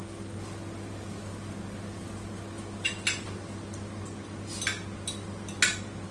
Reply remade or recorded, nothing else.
recorded